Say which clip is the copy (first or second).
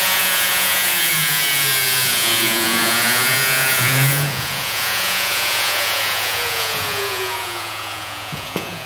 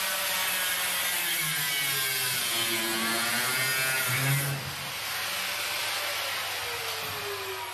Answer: first